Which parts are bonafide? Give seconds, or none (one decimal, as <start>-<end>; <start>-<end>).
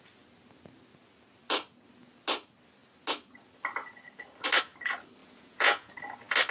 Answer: 0.0-5.2; 5.9-6.5